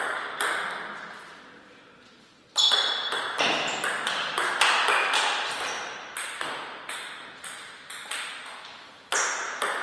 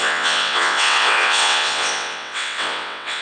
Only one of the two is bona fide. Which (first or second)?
first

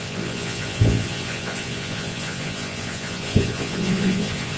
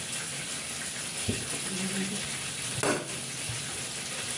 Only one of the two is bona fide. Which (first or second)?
second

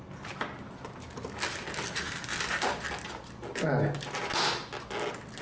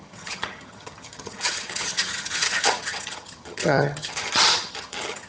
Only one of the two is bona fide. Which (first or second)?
first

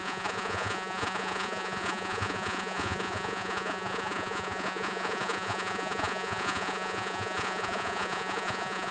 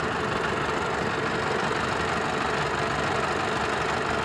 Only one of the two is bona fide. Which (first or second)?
second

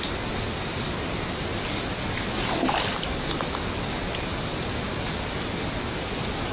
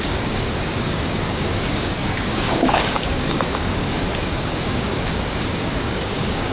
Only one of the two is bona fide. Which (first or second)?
first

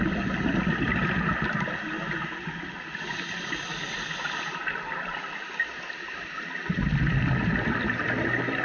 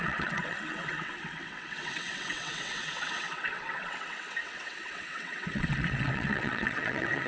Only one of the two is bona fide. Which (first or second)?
first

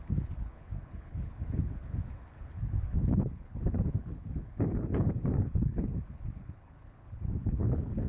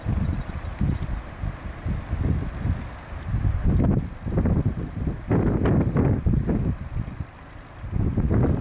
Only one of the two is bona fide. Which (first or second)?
second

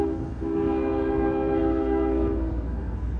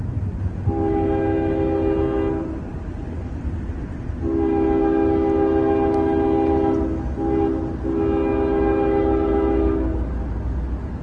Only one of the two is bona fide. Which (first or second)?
second